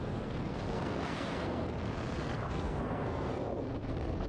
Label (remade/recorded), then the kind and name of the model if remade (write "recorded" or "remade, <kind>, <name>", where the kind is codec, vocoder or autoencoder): remade, codec, SNAC